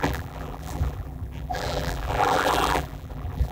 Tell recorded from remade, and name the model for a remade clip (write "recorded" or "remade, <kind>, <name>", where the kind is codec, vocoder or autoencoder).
remade, vocoder, BigVGAN v2